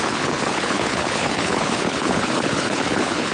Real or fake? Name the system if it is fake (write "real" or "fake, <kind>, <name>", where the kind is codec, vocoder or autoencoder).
fake, codec, HILCodec